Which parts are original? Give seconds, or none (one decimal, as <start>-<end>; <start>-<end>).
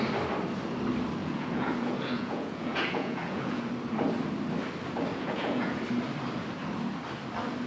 0.0-1.2; 3.7-5.1; 5.8-7.7